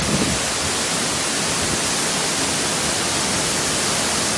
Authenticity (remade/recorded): recorded